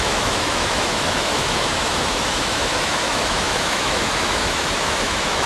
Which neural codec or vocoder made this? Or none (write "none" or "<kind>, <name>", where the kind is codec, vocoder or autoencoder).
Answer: autoencoder, DAC-VAE